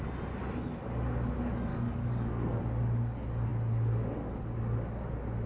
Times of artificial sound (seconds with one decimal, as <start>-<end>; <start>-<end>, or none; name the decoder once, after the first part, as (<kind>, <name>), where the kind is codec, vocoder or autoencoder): 1.7-2.6 (codec, DAC)